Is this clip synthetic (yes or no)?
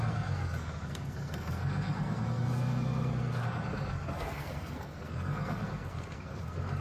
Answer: yes